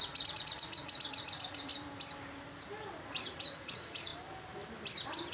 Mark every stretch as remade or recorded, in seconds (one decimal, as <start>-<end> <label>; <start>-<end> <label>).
0.0-1.7 remade; 1.7-3.1 recorded; 3.1-4.1 remade; 4.1-5.3 recorded